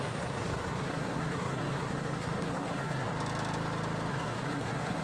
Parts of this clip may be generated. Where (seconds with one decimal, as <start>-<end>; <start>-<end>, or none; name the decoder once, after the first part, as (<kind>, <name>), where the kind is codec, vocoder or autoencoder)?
0.0-3.1 (codec, SNAC); 4.1-5.0